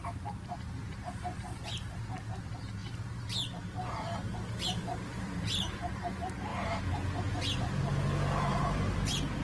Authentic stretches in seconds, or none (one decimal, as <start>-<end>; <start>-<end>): 2.8-3.4